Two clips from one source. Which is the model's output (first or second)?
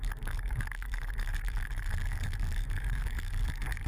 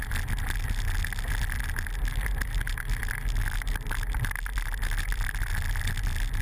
first